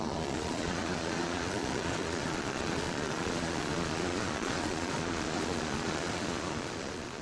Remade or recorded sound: remade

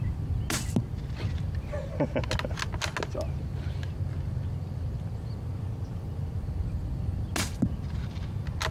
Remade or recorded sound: recorded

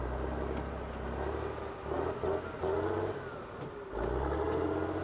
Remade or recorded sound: recorded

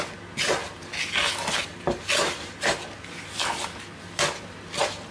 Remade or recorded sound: recorded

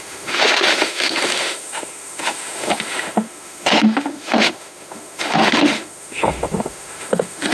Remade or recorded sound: remade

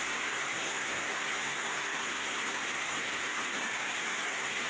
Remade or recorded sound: remade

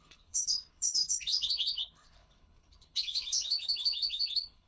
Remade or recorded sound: remade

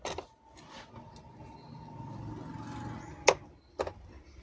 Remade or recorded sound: recorded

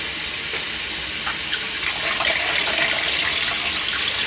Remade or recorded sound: recorded